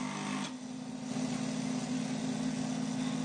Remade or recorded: recorded